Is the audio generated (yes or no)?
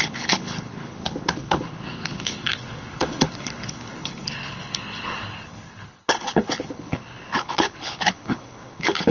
yes